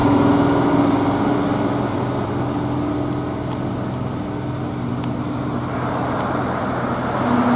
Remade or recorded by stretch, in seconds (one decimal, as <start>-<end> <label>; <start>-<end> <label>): 0.0-7.6 recorded